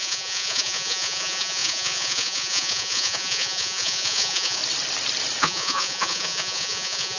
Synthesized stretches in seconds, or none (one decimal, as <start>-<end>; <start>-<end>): 0.0-4.6; 5.4-7.2